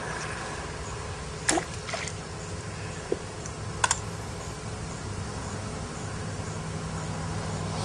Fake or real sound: real